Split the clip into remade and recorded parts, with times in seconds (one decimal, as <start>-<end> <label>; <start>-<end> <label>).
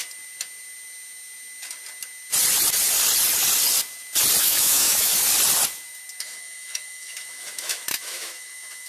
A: 0.0-4.4 recorded; 4.4-5.1 remade; 5.1-6.2 recorded; 6.2-8.9 remade